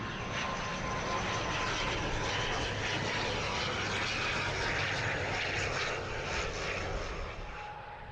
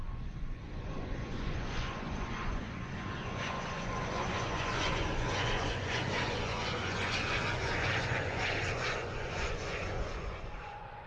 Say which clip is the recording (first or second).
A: first